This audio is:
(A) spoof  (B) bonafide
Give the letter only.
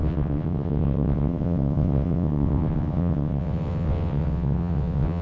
A